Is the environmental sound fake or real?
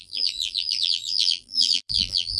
fake